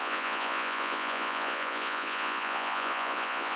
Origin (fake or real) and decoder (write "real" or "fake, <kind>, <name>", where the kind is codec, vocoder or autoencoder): fake, vocoder, Vocos